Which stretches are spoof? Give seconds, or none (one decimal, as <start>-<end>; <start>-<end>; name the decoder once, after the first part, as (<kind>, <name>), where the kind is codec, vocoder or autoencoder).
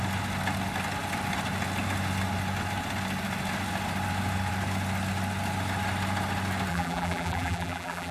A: 6.7-8.1 (vocoder, BigVGAN v2)